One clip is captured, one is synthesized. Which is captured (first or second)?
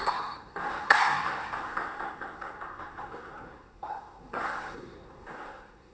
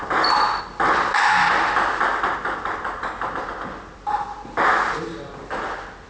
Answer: second